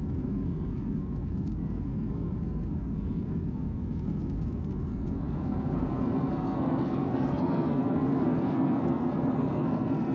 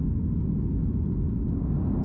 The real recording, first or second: second